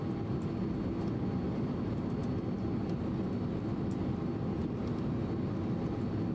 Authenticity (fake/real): real